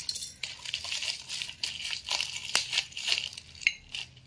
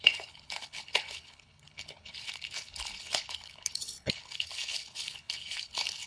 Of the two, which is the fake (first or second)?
second